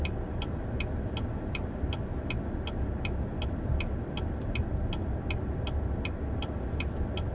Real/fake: real